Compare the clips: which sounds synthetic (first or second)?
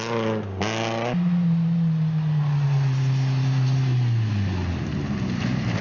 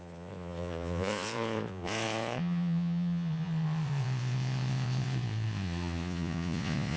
second